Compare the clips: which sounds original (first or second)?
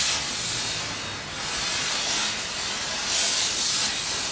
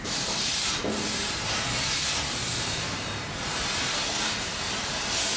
first